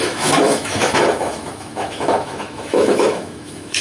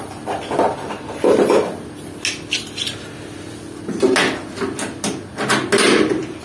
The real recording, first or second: second